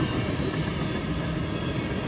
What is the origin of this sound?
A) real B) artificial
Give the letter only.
A